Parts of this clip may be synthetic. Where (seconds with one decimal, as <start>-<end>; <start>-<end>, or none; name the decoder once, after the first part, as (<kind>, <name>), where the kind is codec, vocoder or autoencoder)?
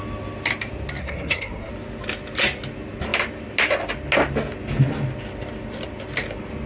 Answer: 1.0-1.7 (codec, SNAC)